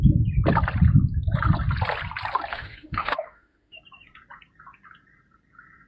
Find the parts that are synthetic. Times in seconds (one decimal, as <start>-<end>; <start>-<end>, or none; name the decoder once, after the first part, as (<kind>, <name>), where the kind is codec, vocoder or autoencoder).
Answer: 2.5-3.8 (autoencoder, DAC-VAE)